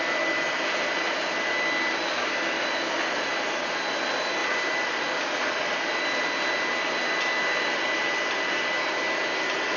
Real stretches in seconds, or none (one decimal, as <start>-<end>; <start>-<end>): 0.0-9.8